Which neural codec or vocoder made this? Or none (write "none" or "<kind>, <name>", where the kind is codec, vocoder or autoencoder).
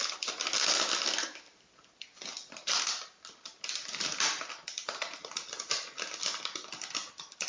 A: none